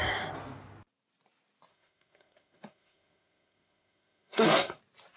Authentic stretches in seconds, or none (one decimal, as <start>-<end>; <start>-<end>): 0.0-1.7; 4.8-5.2